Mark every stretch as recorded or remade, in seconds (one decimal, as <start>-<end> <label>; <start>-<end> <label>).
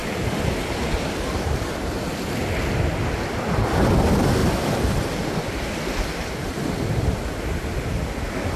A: 0.0-3.3 recorded; 3.3-8.6 remade